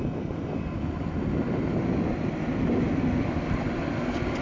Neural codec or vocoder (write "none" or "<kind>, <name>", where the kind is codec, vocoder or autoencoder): none